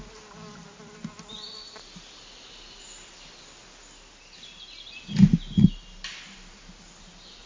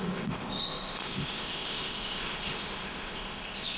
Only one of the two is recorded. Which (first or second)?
first